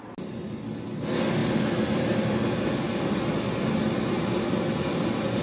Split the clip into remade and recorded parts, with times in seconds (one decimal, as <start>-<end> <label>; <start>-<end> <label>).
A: 0.0-5.4 recorded